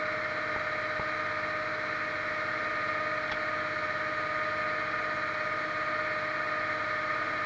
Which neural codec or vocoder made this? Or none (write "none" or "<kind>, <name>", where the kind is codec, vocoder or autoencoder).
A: none